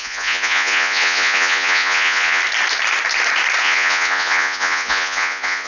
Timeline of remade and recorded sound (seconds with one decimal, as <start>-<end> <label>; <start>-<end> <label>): 0.0-2.4 remade; 2.4-3.6 recorded; 3.6-5.7 remade